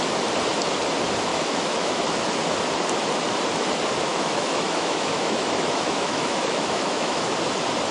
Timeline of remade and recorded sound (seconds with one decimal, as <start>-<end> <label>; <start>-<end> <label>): 0.0-1.3 recorded; 1.3-2.0 remade; 2.0-4.1 recorded; 4.1-7.3 remade; 7.3-7.9 recorded